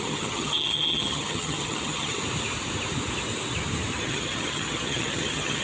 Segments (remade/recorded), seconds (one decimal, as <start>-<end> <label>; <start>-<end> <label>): 0.0-2.2 remade; 2.2-4.0 recorded; 4.0-5.6 remade